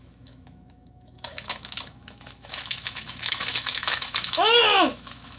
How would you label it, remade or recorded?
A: remade